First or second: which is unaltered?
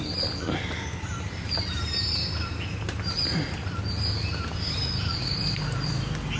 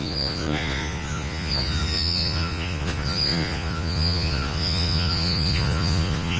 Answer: first